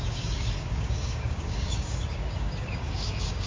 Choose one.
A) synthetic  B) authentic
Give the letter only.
A